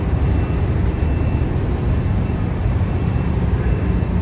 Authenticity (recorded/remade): recorded